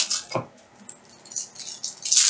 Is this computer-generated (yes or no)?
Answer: no